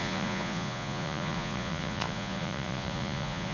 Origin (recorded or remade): remade